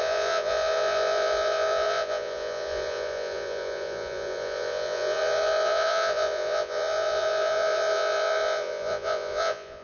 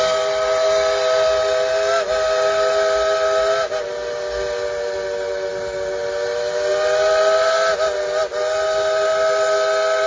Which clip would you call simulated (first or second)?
first